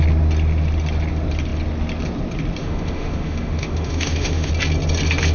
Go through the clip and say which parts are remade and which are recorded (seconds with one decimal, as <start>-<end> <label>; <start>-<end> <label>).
0.0-2.6 recorded; 2.6-4.5 remade; 4.5-5.3 recorded